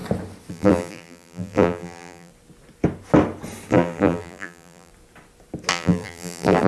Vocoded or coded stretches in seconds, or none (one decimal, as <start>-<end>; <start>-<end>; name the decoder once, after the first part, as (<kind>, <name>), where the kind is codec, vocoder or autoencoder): 0.5-2.3 (vocoder, BigVGAN v2); 3.7-4.9; 5.7-6.7